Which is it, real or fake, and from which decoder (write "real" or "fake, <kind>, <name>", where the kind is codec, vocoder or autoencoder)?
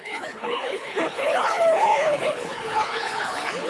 fake, codec, HILCodec